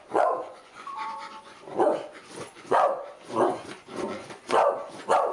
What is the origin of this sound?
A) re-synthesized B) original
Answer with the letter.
A